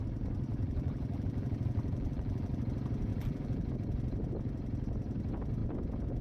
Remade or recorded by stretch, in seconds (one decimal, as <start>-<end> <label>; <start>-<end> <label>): 0.0-0.5 recorded; 0.5-2.6 remade; 2.6-3.1 recorded; 3.1-3.7 remade; 3.7-6.2 recorded